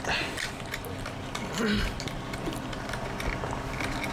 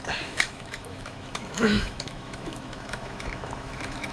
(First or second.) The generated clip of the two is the second